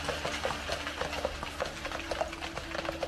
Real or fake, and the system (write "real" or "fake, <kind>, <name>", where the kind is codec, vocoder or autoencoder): real